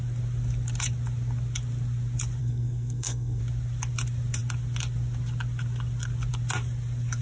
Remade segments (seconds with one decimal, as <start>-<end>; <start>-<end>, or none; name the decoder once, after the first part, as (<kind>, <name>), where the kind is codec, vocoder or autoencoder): 2.4-3.4 (codec, SNAC)